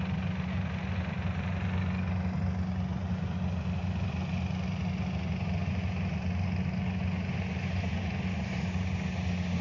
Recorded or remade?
recorded